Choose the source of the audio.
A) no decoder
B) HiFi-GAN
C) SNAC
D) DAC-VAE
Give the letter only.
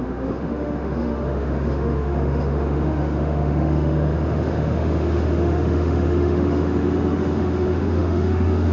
D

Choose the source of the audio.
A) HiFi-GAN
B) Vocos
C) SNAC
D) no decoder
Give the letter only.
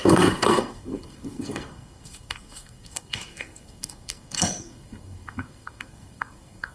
C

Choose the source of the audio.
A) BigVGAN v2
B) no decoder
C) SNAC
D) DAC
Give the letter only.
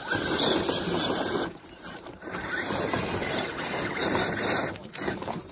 A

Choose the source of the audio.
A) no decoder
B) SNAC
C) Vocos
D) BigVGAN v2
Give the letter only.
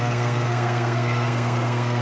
B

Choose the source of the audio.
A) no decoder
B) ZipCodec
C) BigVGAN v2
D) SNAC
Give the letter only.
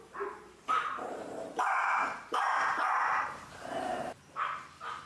C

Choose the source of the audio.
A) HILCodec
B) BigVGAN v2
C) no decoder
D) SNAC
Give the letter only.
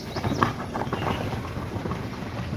B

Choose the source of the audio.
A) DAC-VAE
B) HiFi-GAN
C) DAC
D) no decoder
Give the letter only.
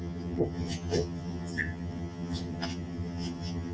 B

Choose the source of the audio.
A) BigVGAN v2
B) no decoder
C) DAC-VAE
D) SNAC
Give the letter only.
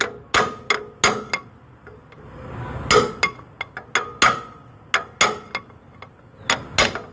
B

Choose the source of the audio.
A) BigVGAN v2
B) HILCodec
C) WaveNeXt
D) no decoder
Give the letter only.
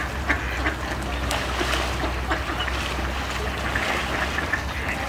D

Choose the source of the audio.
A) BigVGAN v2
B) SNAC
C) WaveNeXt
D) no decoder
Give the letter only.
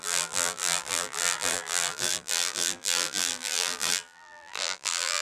A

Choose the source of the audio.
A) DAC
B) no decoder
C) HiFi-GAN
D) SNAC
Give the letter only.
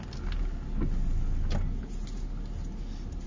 B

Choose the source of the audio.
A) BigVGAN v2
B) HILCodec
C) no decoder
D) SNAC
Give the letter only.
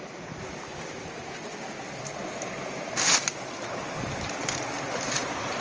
C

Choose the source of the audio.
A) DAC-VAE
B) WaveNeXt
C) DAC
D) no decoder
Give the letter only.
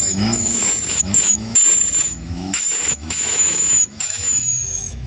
A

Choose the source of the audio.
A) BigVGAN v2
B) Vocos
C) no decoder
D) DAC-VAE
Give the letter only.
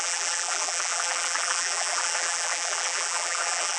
A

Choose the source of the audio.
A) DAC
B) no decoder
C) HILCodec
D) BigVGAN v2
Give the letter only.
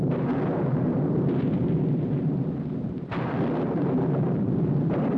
B